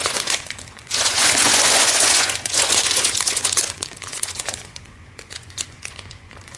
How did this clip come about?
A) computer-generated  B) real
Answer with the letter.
A